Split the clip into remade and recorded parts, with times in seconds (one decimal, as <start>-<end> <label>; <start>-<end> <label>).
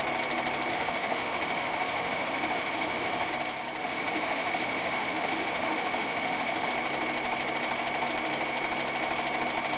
0.0-0.7 recorded; 0.7-3.3 remade; 3.3-3.8 recorded; 3.8-6.7 remade; 6.7-9.8 recorded